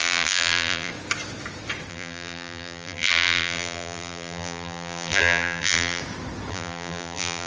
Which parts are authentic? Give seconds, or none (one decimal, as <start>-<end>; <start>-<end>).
0.9-1.9; 6.0-6.5